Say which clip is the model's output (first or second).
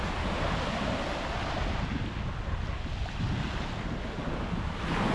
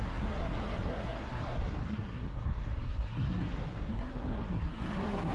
second